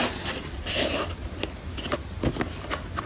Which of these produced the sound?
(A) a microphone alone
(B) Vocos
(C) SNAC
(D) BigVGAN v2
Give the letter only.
A